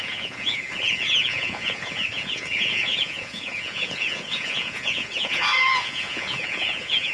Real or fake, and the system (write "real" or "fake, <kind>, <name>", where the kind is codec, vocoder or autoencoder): fake, vocoder, Vocos